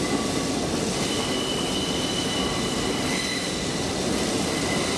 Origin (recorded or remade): recorded